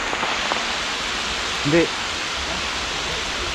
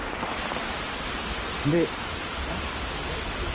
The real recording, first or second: first